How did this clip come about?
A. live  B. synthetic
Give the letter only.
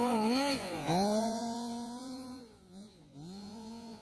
B